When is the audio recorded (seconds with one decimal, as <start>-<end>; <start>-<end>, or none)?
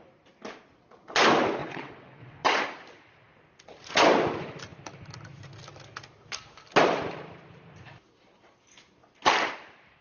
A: 0.0-1.6; 2.6-10.0